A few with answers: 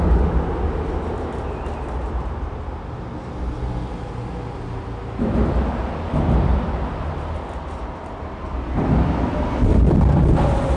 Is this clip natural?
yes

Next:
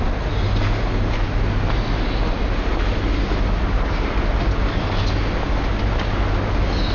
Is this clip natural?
yes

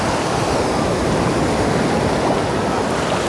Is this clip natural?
yes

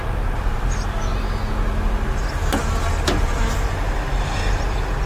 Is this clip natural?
yes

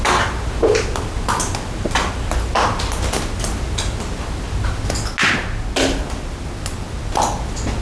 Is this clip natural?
yes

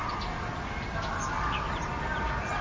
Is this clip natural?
yes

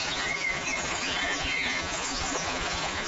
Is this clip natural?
no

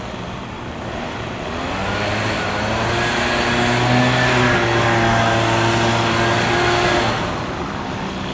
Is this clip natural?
yes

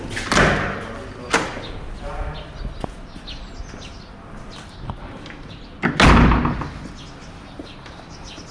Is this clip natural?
yes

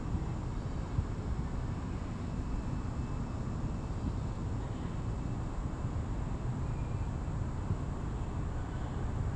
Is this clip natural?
yes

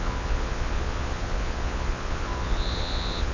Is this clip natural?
no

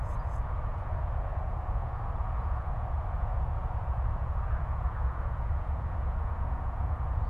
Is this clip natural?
no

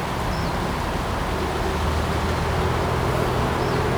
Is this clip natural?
yes